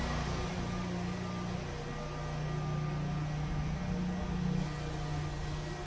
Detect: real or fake real